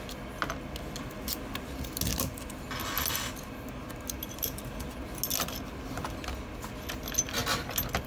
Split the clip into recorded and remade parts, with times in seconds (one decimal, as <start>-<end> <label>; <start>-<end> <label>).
0.0-8.1 recorded